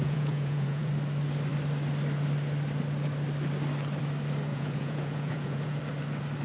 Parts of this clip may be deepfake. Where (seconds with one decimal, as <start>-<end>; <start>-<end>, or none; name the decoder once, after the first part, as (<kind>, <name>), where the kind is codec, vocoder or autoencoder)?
0.0-0.9 (vocoder, Vocos); 4.5-5.8